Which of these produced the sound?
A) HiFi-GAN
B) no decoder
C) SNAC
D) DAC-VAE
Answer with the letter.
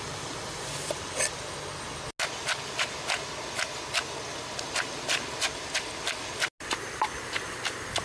B